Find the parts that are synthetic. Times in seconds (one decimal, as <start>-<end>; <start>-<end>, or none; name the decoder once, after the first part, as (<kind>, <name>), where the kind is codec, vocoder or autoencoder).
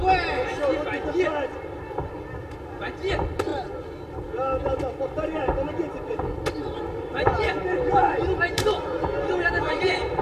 none